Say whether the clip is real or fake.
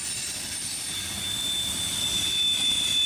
real